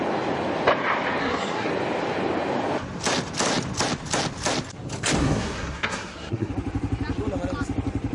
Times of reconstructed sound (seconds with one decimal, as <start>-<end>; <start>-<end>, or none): 1.2-1.7; 5.2-6.5